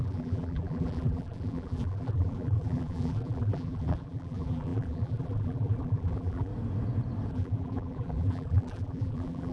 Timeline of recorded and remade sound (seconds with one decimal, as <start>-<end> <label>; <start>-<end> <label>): 0.0-6.5 remade; 6.5-7.3 recorded; 7.3-9.5 remade